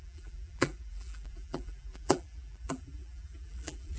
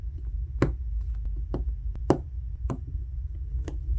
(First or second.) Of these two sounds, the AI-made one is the first